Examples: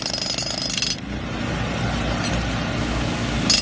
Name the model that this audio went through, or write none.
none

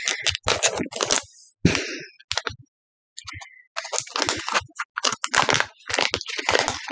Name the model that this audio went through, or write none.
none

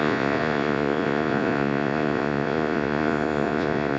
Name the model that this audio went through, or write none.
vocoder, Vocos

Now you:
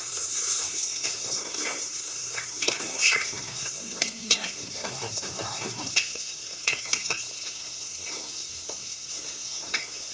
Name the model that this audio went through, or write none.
codec, SNAC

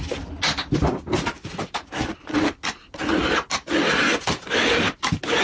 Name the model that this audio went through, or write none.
none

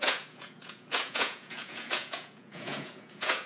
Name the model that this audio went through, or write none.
vocoder, Vocos